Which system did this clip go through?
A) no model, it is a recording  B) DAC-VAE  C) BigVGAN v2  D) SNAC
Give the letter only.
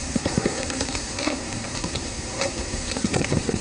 D